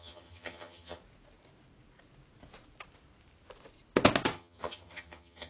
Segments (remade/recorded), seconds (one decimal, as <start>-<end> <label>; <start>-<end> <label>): 0.0-1.0 remade; 1.0-4.3 recorded; 4.3-5.5 remade